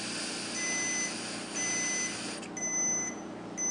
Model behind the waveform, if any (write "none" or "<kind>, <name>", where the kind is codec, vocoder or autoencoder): none